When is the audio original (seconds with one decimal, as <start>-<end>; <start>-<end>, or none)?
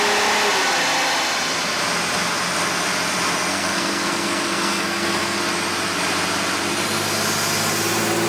0.0-3.5; 5.4-8.3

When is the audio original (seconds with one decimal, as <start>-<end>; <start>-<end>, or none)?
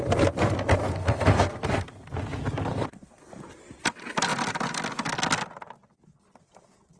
0.0-0.8; 2.1-2.7; 3.3-7.0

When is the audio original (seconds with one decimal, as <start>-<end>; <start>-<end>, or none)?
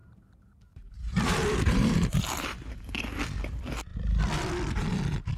3.2-5.4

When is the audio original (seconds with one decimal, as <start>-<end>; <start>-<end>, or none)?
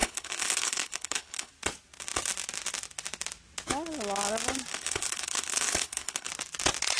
1.5-4.7; 6.3-7.0